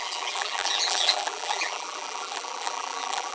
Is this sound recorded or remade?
remade